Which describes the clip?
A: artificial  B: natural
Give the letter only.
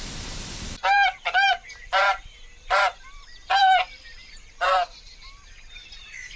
A